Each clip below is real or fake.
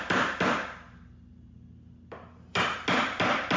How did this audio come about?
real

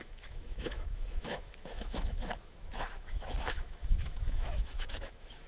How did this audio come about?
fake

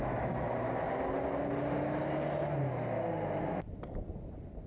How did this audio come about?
real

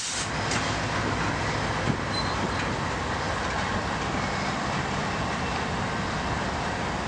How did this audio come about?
real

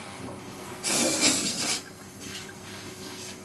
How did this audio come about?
fake